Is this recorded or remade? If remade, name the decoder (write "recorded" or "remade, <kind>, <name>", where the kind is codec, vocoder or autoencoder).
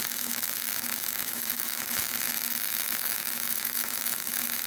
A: remade, autoencoder, DAC-VAE